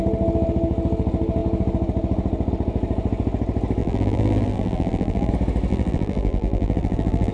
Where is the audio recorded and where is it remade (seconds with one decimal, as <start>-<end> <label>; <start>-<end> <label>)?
0.0-3.8 recorded; 3.8-5.3 remade; 5.3-5.7 recorded; 5.7-7.3 remade